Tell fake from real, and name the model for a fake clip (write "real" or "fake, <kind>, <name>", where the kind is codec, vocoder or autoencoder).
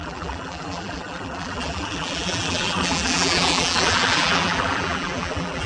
fake, vocoder, BigVGAN v2